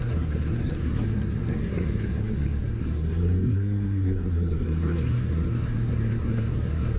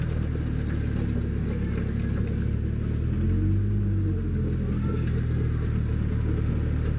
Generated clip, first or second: first